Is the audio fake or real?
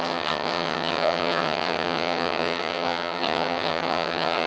fake